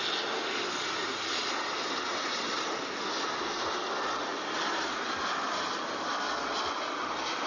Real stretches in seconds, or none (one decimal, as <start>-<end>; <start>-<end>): 0.0-7.5